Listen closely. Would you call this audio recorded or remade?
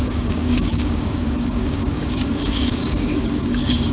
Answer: remade